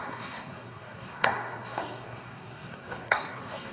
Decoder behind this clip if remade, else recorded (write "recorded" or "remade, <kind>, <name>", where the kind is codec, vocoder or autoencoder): remade, codec, SNAC